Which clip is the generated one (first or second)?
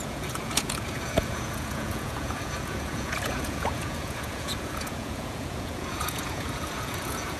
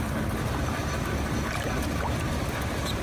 first